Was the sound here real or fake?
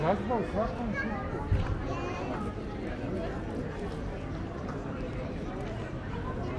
real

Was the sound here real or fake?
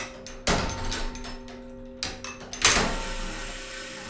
real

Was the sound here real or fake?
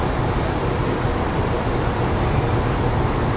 fake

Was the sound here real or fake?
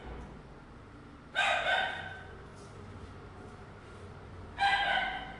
fake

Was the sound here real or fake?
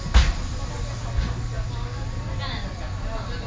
real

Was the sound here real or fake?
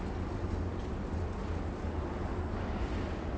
real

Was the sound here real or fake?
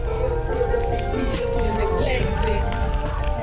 real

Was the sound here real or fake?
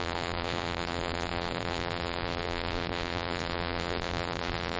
fake